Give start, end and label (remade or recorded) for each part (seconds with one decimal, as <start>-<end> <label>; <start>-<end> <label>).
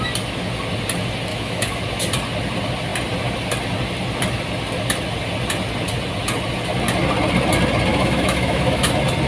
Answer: 0.0-1.3 recorded; 1.3-1.8 remade; 1.8-7.9 recorded; 7.9-8.9 remade; 8.9-9.3 recorded